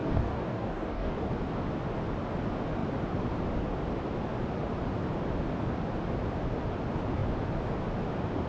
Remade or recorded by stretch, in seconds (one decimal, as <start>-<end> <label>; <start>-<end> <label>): 0.0-1.3 remade; 1.3-8.5 recorded